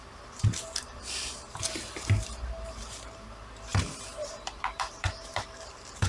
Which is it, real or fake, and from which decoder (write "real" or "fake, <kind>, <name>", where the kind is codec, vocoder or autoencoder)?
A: fake, vocoder, BigVGAN v2